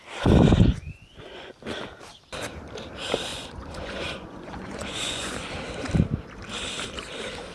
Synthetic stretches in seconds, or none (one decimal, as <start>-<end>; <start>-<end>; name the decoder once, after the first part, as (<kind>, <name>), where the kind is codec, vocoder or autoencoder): 0.6-1.5 (vocoder, Vocos); 3.3-5.5